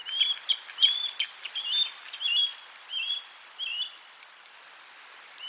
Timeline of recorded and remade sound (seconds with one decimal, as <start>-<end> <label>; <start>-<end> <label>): 0.0-5.5 recorded